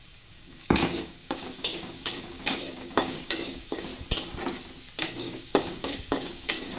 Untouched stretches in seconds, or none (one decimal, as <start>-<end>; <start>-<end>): 3.9-5.0